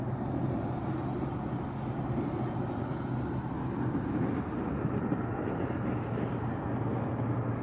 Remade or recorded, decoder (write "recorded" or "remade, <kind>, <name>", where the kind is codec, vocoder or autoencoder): recorded